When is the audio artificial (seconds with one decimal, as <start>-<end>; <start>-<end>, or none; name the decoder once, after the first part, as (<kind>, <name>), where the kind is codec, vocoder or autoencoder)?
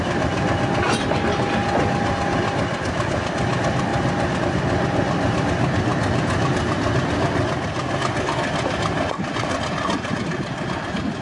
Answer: none